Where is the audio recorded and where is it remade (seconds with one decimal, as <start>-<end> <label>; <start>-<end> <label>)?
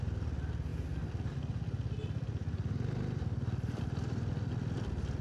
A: 0.0-5.2 recorded